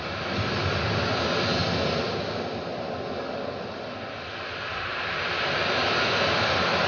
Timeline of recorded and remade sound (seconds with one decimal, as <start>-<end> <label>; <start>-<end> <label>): 0.0-6.9 recorded